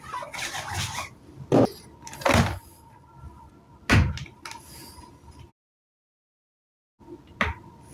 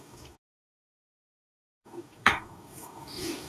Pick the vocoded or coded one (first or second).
second